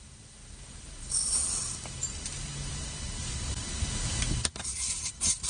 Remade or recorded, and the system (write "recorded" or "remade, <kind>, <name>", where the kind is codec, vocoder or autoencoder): recorded